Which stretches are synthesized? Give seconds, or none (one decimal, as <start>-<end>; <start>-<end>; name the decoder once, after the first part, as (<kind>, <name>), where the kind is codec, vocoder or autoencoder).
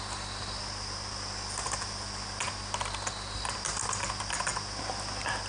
none